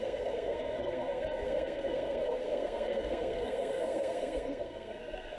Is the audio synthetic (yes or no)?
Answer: yes